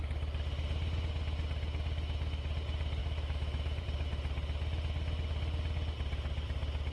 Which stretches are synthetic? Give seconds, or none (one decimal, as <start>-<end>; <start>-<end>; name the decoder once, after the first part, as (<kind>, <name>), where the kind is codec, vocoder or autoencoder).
3.0-3.8 (autoencoder, DAC-VAE)